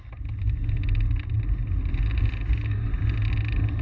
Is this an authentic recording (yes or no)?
yes